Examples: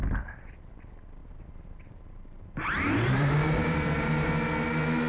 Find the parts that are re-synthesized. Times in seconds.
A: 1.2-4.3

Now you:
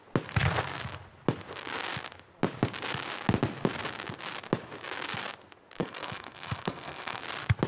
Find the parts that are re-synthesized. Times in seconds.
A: 5.8-7.2

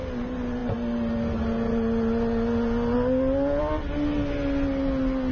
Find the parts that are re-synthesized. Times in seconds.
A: none

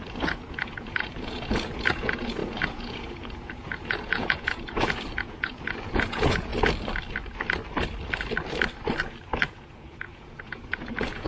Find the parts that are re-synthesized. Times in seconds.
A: 0.0-6.5; 9.4-11.3

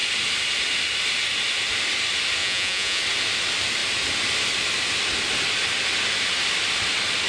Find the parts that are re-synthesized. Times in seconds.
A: 2.4-3.0

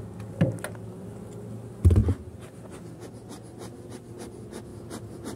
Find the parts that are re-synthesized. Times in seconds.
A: 4.7-5.4